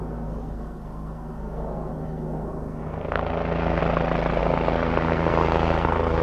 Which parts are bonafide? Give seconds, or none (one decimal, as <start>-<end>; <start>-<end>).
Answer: 3.8-4.4